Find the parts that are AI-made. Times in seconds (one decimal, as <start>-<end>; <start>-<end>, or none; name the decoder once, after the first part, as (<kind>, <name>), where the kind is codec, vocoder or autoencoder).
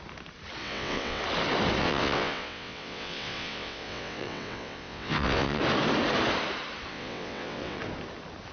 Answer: 0.6-1.2 (vocoder, WaveNeXt); 1.8-5.6; 6.9-7.8